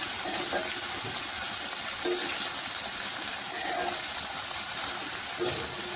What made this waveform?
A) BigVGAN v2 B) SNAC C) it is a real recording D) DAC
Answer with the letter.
C